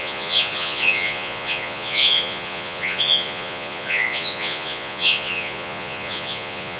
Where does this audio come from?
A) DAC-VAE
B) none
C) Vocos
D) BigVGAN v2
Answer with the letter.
C